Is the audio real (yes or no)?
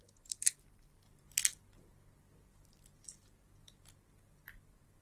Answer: yes